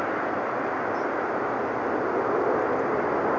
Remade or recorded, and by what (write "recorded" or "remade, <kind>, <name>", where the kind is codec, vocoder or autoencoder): recorded